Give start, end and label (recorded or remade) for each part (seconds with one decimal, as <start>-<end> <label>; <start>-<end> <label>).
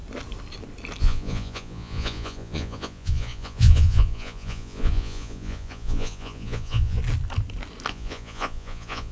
0.0-1.0 recorded; 1.0-7.0 remade; 7.0-7.9 recorded; 7.9-9.1 remade